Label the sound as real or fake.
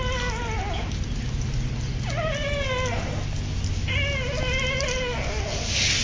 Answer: real